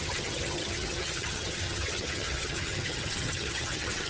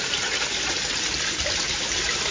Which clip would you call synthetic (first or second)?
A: first